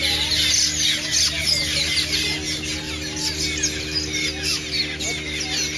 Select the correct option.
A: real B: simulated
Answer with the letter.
A